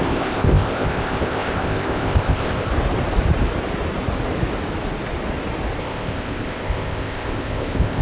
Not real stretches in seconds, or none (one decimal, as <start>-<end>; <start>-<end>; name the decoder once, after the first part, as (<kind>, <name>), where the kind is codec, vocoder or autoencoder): 0.0-2.7 (codec, ZipCodec); 5.8-8.0